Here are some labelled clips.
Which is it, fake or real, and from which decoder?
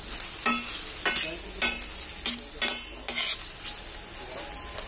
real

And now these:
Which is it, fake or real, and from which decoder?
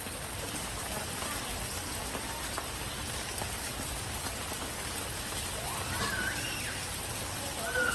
real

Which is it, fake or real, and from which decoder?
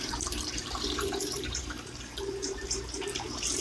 fake, vocoder, BigVGAN v2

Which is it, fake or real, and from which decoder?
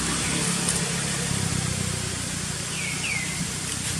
real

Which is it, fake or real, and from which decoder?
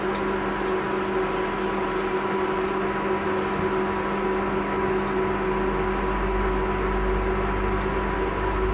real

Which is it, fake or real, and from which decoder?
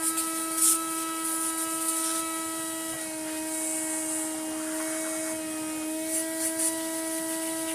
real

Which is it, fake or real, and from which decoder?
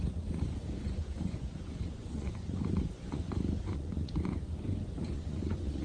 fake, vocoder, Vocos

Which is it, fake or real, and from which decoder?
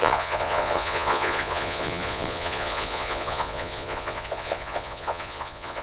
fake, vocoder, Vocos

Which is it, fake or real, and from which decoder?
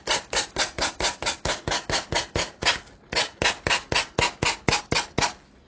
real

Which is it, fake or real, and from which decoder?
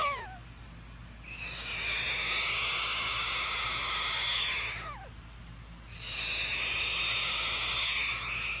real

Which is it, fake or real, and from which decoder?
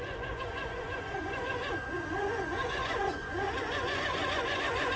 fake, vocoder, Vocos